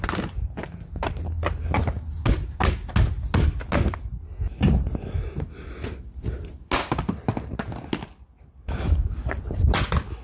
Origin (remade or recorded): recorded